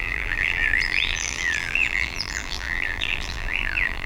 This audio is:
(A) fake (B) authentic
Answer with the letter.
A